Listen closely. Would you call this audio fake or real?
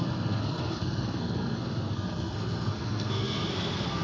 fake